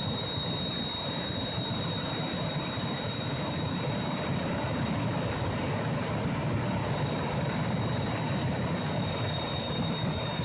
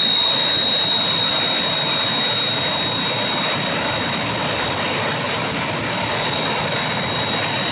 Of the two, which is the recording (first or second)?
second